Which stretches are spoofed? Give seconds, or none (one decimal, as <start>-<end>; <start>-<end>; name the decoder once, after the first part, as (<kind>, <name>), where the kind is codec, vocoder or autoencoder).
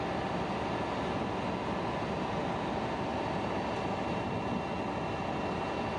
3.1-4.3 (vocoder, BigVGAN v2)